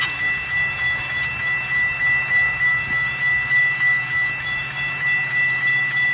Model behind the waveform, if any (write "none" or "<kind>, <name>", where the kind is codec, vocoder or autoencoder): autoencoder, DAC-VAE